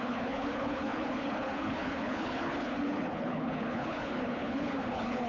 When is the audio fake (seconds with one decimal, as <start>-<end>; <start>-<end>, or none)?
0.0-5.3